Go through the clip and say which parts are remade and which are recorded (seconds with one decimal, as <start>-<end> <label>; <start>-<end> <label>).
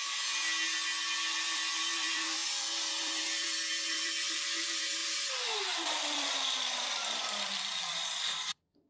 0.0-1.3 recorded; 1.3-8.9 remade